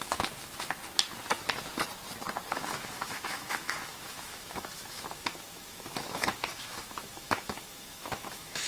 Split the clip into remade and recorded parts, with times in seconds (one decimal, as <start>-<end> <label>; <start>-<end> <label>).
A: 0.0-0.8 remade; 0.8-2.5 recorded; 2.5-8.7 remade